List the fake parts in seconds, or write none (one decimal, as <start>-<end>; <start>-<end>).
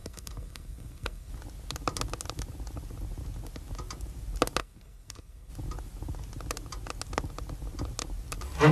0.0-1.3; 4.6-5.5